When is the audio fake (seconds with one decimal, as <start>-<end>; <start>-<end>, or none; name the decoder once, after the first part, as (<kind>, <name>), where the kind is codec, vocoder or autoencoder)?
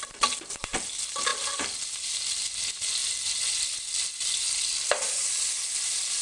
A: none